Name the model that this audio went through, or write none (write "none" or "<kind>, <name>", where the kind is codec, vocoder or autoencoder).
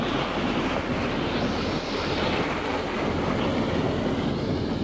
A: none